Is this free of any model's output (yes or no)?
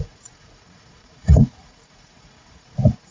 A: no